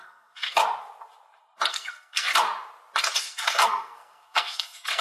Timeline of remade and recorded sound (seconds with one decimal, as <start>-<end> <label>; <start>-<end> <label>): 0.0-0.6 remade; 0.6-1.7 recorded; 1.7-2.3 remade; 2.3-3.2 recorded; 3.2-5.0 remade